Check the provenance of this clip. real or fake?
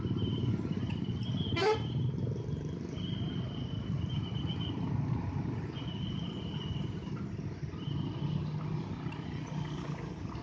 real